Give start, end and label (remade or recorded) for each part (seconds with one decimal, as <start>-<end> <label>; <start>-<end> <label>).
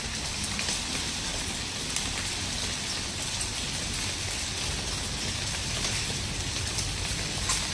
0.0-7.7 recorded